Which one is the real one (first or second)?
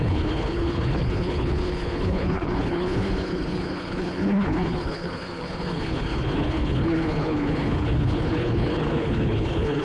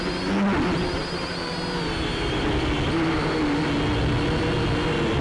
second